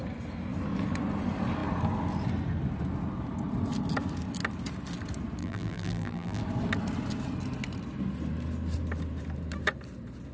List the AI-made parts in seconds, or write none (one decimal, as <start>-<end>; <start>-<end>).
5.4-6.4